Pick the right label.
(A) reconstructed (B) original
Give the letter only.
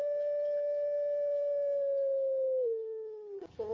B